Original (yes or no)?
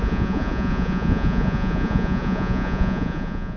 no